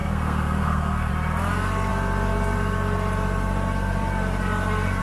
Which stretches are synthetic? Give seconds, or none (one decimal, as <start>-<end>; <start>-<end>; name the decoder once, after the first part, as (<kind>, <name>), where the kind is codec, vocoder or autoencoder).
0.0-1.1 (codec, SNAC)

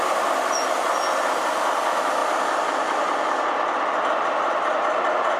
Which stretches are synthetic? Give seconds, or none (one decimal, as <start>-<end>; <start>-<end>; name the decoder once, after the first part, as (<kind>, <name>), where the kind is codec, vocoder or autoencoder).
none

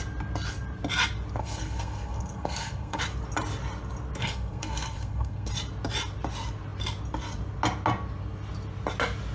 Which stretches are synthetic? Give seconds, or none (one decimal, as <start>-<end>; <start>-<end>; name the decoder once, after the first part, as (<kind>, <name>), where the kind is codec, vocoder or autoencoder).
1.4-3.0 (codec, SNAC); 4.2-5.5

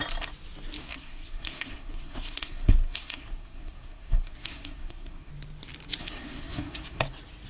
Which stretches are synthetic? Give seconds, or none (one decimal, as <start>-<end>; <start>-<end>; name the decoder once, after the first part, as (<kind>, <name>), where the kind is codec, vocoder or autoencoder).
0.8-5.3 (codec, SNAC); 6.0-7.0

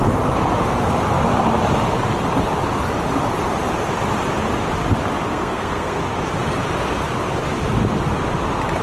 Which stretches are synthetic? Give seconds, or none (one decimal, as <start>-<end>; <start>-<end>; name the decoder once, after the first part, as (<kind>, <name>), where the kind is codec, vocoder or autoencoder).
5.3-6.0 (codec, SNAC)

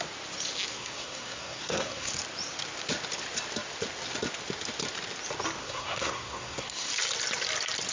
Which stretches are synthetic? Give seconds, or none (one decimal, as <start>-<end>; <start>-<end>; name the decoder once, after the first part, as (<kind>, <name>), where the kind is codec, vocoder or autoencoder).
0.7-2.1 (codec, SNAC); 5.6-6.9

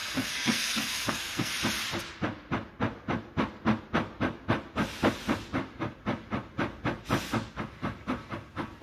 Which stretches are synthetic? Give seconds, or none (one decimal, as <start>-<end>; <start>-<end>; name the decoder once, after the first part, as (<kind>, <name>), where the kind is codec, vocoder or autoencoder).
0.0-1.5 (codec, SNAC)